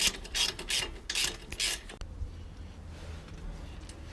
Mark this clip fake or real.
real